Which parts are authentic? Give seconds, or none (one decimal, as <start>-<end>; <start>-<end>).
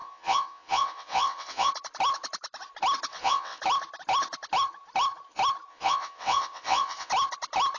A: 1.7-3.1; 3.6-5.7; 7.1-7.8